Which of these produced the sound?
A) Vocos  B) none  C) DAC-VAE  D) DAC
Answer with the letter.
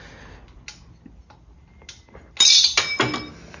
B